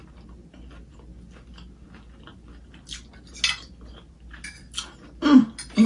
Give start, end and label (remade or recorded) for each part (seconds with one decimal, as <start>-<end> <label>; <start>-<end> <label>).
0.0-5.9 recorded